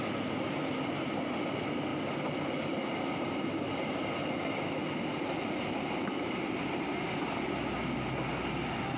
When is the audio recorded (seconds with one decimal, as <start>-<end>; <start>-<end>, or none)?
0.0-9.0